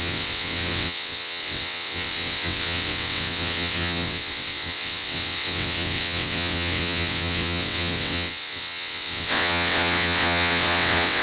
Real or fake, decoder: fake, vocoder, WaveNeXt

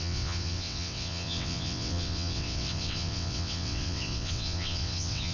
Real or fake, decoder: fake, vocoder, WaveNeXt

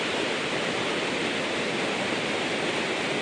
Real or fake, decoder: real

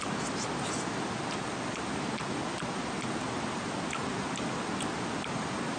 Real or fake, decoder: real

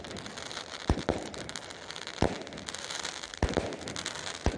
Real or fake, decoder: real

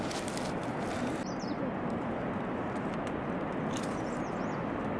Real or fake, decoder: real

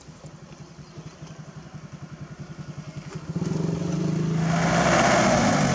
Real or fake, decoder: real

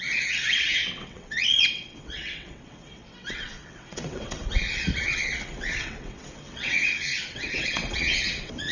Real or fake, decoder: fake, vocoder, WaveNeXt